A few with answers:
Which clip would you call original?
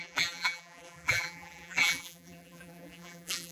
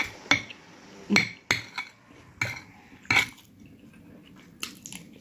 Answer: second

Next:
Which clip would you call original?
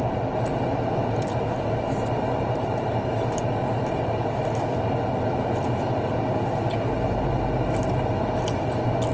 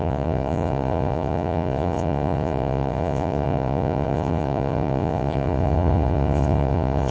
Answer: first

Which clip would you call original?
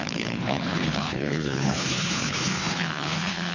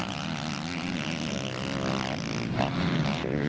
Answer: second